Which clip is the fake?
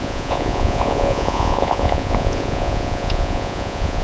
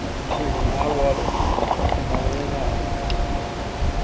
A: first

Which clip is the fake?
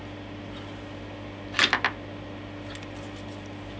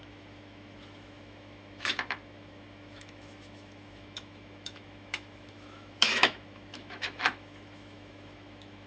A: second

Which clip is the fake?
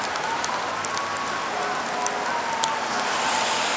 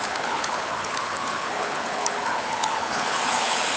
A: second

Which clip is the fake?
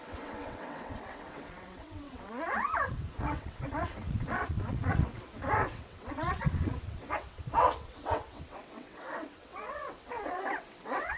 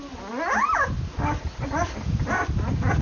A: first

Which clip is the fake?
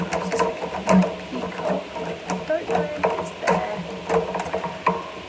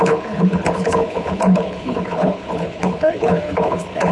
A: second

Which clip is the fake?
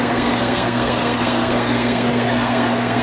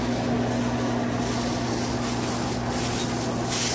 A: first